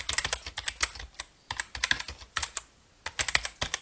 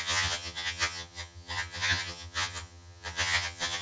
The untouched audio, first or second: first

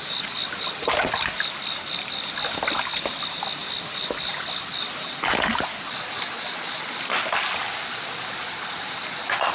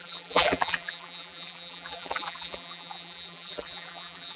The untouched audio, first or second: first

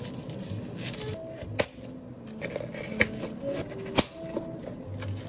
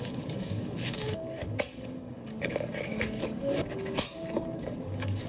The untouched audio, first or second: first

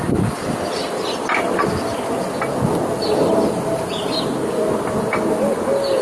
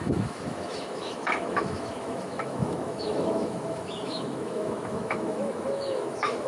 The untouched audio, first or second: first